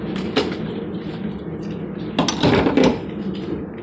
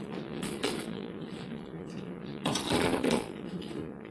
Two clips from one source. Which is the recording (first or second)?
first